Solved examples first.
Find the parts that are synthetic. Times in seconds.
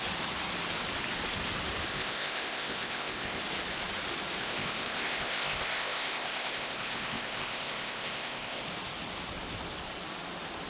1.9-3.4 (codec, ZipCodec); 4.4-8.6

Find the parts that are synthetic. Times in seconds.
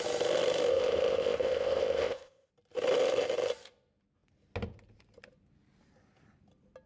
0.7-2.5 (codec, ZipCodec)